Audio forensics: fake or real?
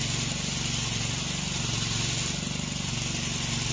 real